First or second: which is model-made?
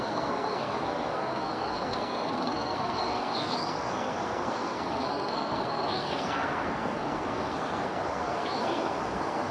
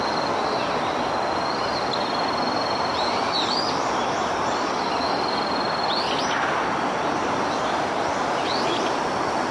first